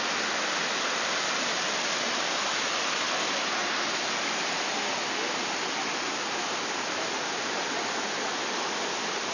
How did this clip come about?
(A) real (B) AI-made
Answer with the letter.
A